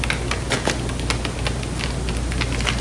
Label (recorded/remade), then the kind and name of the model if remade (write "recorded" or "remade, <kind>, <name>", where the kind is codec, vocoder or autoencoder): recorded